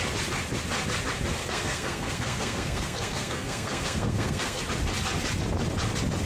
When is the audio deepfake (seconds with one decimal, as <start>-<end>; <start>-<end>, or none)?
1.4-4.6